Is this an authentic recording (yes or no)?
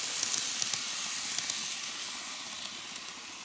yes